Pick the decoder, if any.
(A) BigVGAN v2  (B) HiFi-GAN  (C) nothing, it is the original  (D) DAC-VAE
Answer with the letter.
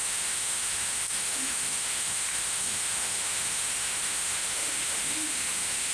D